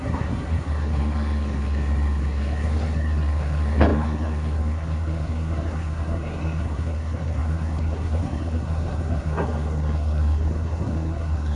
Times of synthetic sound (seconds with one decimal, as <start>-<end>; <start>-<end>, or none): 0.0-11.6